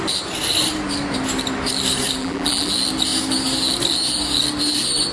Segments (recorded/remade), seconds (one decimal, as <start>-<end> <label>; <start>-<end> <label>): 0.0-2.2 recorded; 2.2-2.7 remade; 2.7-5.1 recorded